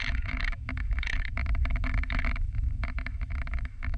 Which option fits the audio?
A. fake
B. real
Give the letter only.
A